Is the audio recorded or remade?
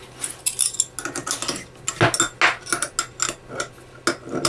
recorded